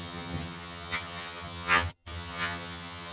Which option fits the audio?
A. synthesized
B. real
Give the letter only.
A